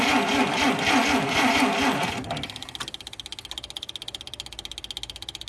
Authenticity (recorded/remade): recorded